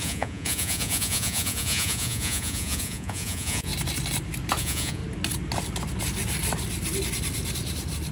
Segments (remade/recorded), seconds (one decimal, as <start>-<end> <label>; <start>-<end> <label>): 0.0-3.7 remade; 3.7-4.6 recorded; 4.6-5.0 remade; 5.0-8.1 recorded

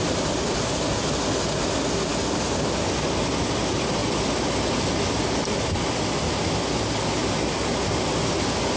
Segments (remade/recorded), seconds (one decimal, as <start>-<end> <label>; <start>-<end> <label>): 0.0-8.8 recorded

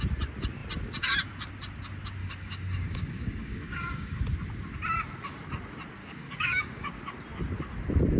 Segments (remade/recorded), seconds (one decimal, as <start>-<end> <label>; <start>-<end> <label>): 0.0-2.2 recorded; 2.2-4.2 remade; 4.2-6.0 recorded; 6.0-6.9 remade; 6.9-8.2 recorded